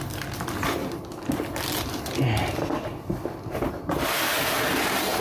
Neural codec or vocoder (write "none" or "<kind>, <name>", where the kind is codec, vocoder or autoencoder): none